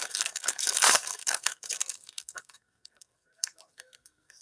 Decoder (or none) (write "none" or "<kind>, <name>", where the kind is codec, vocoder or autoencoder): codec, SNAC